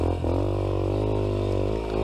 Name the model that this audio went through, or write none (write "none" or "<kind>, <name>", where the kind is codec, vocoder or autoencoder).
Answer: none